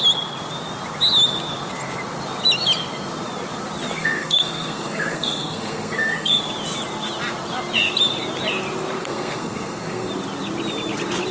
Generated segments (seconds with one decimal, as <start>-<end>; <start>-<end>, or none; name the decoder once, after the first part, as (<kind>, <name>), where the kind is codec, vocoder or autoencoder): 4.0-6.4 (codec, SNAC); 9.0-10.1